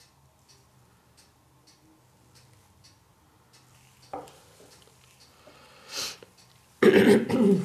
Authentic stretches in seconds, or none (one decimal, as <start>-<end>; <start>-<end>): 0.0-7.6